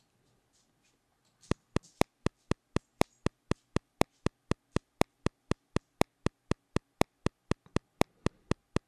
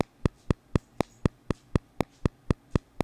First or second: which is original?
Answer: first